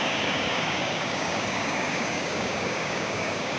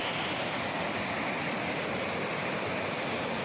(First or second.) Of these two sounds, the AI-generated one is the first